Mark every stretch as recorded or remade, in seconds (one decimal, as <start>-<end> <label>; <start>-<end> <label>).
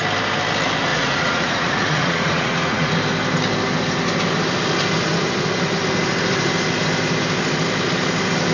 0.0-0.9 recorded; 0.9-2.9 remade; 2.9-8.5 recorded